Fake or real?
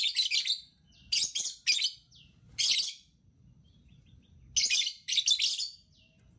real